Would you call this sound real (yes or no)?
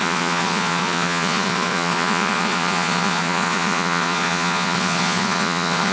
no